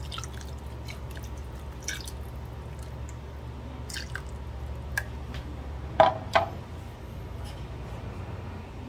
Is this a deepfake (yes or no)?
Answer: no